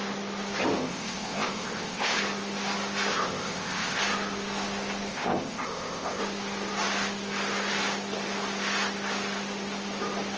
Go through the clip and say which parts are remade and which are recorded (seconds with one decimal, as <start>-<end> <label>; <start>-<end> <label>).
0.0-0.8 recorded; 0.8-2.2 remade; 2.2-3.1 recorded; 3.1-4.0 remade; 4.0-5.1 recorded; 5.1-6.2 remade; 6.2-10.4 recorded